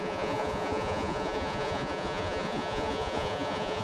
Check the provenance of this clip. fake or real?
fake